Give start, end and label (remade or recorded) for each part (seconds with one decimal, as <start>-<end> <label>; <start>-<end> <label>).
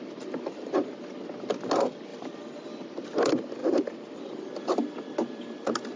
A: 0.0-2.1 recorded; 2.1-2.7 remade; 2.7-3.6 recorded; 3.6-4.2 remade; 4.2-6.0 recorded